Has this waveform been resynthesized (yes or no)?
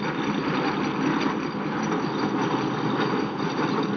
no